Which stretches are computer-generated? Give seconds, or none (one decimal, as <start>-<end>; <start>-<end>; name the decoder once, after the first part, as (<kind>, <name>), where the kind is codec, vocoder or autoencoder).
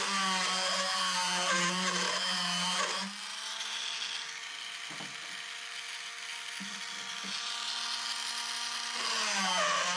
3.3-3.8 (vocoder, BigVGAN v2)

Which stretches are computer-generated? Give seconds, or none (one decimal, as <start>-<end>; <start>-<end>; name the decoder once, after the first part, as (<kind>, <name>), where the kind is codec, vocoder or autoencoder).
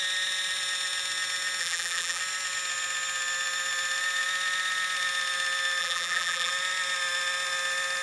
1.6-2.2 (vocoder, BigVGAN v2); 5.8-6.5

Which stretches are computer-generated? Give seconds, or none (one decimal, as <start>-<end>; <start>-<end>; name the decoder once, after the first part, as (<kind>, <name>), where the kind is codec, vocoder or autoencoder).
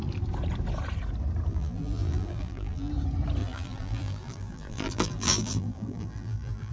1.5-2.9 (vocoder, BigVGAN v2); 3.4-6.7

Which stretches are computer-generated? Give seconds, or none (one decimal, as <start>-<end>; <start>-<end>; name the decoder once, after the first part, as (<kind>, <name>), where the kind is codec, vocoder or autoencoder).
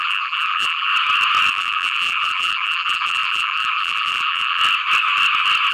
0.0-0.9 (vocoder, BigVGAN v2); 1.5-4.6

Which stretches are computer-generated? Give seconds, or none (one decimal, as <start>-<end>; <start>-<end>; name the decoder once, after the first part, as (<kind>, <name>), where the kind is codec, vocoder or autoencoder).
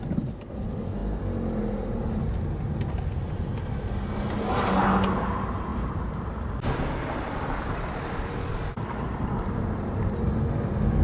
1.0-1.6 (vocoder, BigVGAN v2); 5.7-10.4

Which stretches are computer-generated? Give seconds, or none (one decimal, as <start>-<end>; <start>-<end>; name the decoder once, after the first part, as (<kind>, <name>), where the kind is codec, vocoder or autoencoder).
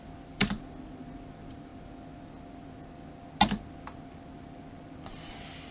0.0-1.7 (vocoder, BigVGAN v2); 3.6-5.7